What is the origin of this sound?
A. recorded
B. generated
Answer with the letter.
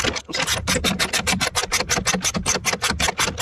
B